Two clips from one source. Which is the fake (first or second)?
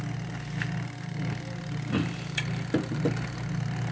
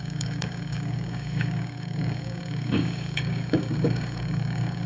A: second